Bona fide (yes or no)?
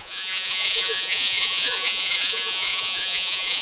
no